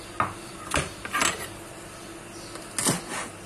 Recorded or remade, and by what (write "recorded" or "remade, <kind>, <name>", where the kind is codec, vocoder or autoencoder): recorded